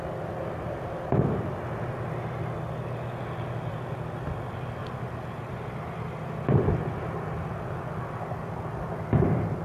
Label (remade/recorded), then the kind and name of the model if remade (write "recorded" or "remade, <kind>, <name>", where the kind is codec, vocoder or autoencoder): recorded